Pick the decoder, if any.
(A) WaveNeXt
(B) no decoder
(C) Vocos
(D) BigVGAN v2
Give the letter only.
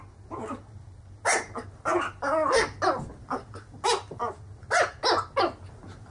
B